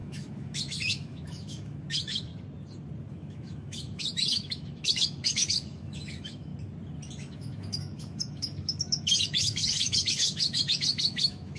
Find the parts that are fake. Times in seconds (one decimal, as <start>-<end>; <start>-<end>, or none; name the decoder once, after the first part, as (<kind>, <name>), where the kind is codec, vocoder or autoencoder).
0.0-2.3 (autoencoder, DAC-VAE); 3.1-6.5; 7.1-11.6